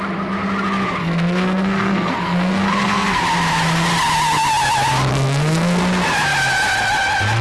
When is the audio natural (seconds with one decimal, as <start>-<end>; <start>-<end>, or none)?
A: 0.0-1.0; 3.2-5.1; 5.8-7.4